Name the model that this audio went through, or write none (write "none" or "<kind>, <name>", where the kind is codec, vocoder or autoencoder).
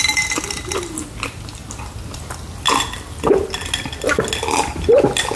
none